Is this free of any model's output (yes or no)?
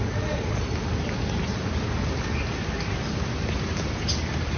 yes